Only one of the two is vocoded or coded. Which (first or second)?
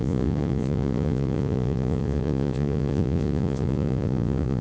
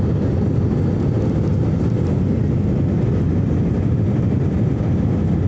first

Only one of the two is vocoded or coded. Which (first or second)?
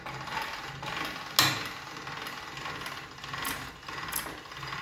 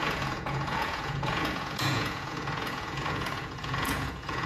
second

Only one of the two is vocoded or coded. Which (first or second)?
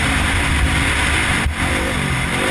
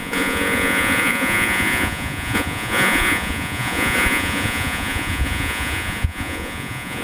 second